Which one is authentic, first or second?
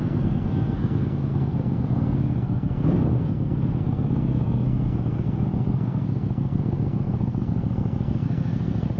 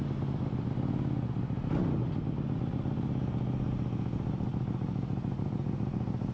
second